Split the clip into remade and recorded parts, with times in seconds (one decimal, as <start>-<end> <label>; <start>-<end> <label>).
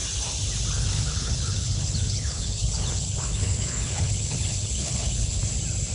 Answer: 0.0-0.7 recorded; 0.7-5.4 remade; 5.4-5.9 recorded